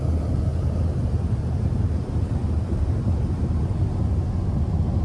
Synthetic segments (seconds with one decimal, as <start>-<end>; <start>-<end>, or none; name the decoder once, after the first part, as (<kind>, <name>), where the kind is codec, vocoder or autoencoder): 0.5-1.9 (vocoder, BigVGAN v2); 2.4-3.8